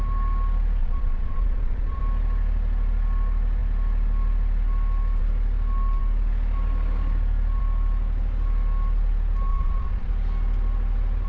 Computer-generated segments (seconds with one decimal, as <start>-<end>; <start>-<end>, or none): 0.8-2.0; 9.5-10.1